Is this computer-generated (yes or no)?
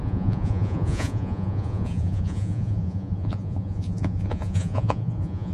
yes